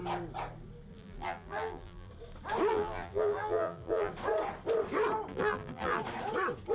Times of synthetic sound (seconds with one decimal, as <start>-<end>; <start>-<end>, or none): 0.9-2.1; 2.7-4.1; 5.3-6.0

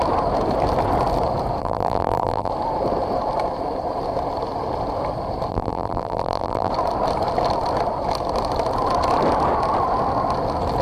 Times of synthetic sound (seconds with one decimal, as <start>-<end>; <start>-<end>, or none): 1.6-2.5; 5.5-6.7

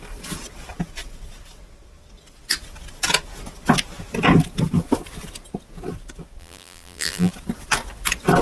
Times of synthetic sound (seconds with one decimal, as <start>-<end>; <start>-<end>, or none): 6.4-7.3

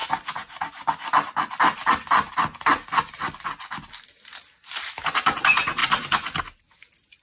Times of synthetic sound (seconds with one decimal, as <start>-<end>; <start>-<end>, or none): none

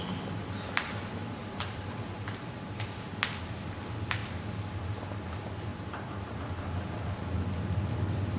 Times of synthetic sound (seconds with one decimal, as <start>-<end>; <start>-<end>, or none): 1.4-3.1; 4.2-5.0; 5.7-6.4

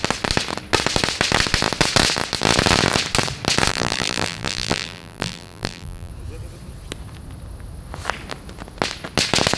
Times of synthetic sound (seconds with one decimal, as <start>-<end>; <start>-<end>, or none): 3.7-6.1

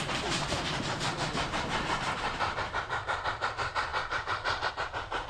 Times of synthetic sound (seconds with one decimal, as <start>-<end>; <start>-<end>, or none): 0.0-5.3